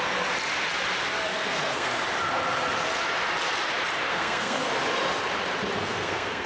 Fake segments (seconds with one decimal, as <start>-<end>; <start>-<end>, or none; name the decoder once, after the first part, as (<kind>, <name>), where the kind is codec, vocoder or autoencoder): 1.3-2.0 (codec, SNAC); 4.1-4.7; 5.8-6.5